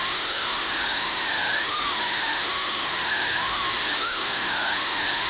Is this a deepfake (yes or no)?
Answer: yes